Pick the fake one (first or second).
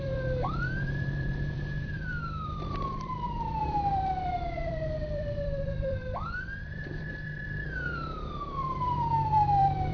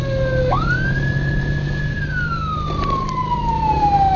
first